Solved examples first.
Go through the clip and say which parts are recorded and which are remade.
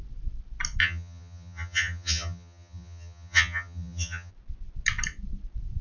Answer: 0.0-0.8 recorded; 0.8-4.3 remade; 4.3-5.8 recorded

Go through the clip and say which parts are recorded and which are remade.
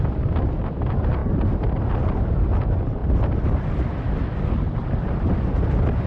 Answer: 0.0-6.1 recorded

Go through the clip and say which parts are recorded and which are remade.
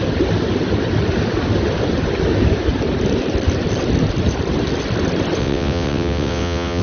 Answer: 0.0-5.4 recorded; 5.4-6.8 remade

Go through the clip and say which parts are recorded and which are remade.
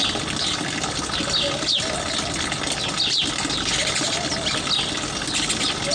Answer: 0.0-5.9 recorded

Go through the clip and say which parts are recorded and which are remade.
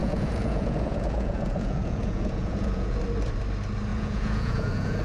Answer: 0.0-3.0 remade; 3.0-3.9 recorded; 3.9-5.0 remade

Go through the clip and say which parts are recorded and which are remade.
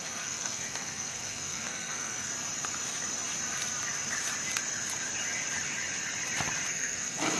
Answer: 0.0-2.3 remade; 2.3-6.7 recorded; 6.7-7.4 remade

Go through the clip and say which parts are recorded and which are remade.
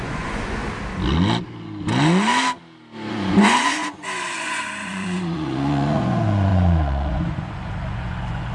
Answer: 0.0-0.6 remade; 0.6-3.1 recorded; 3.1-8.5 remade